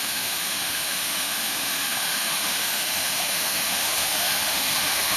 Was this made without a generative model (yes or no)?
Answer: no